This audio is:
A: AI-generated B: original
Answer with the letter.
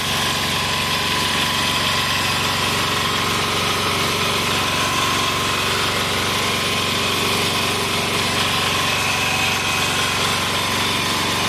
B